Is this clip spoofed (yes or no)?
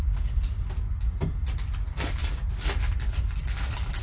no